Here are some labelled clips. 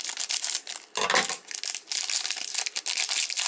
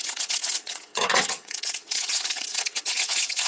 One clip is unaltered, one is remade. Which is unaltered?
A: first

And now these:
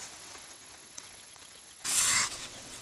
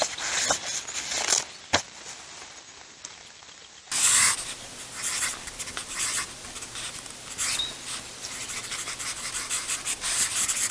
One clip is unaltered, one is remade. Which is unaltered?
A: second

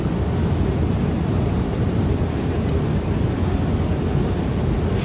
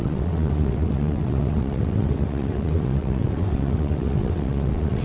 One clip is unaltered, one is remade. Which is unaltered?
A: first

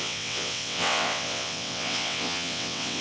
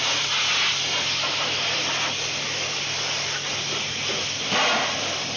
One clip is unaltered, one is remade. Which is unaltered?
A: second